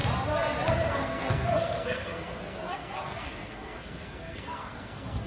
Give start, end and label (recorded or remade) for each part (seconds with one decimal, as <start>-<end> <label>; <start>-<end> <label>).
0.0-0.7 recorded; 0.7-5.3 remade